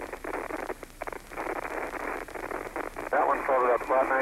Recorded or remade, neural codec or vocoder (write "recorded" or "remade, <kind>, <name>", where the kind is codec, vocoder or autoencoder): recorded